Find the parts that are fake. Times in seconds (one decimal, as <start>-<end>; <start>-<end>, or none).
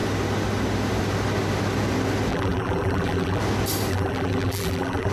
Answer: 2.3-3.4; 3.9-5.1